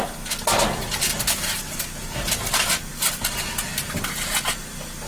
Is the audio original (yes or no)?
yes